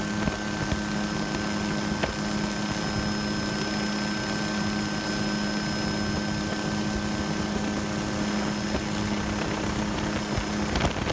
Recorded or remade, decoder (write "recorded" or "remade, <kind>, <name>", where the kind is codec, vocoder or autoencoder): recorded